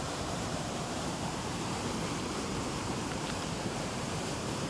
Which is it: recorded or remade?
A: remade